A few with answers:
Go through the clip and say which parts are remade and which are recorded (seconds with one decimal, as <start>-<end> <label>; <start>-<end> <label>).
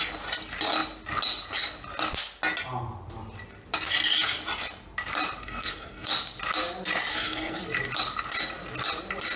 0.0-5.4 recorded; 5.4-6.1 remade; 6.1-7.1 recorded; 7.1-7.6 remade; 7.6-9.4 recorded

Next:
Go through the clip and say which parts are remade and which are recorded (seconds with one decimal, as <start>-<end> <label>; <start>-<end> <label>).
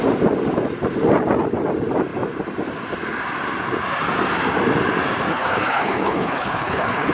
0.0-5.3 recorded; 5.3-7.1 remade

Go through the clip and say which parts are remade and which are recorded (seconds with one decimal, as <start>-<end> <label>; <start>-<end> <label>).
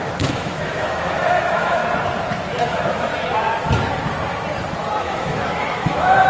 0.0-1.8 remade; 1.8-2.6 recorded; 2.6-3.1 remade; 3.1-5.0 recorded; 5.0-6.3 remade